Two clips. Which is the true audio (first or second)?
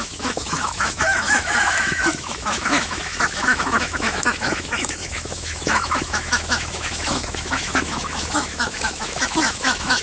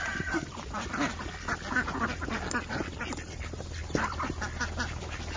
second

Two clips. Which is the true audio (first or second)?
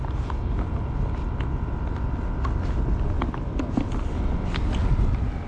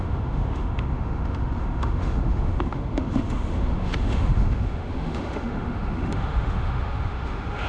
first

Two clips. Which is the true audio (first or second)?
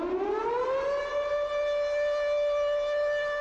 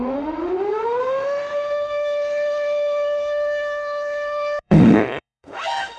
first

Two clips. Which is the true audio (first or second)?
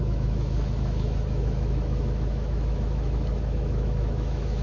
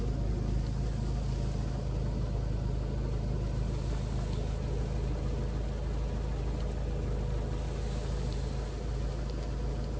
second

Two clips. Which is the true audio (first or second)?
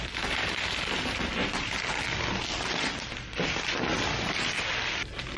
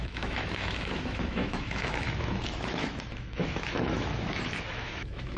first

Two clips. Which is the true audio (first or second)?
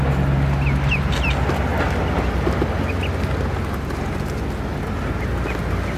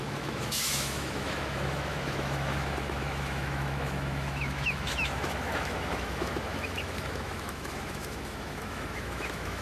first